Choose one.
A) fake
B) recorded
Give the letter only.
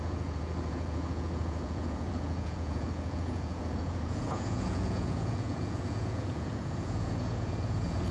A